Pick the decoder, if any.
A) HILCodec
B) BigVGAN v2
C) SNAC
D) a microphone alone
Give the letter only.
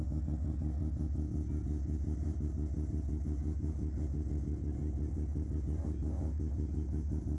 D